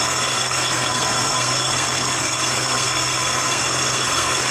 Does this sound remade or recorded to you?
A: remade